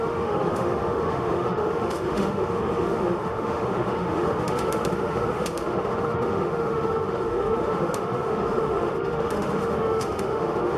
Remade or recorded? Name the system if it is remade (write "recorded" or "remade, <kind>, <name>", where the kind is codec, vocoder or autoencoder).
remade, autoencoder, DAC-VAE